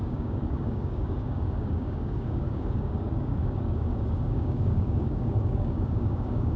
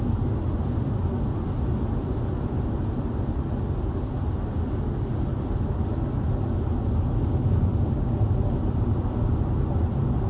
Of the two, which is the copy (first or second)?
first